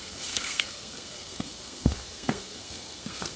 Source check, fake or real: fake